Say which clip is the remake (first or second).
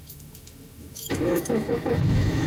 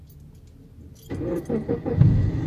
first